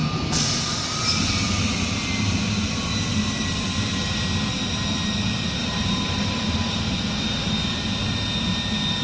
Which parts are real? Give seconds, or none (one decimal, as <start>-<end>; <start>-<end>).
0.0-5.6; 6.8-9.0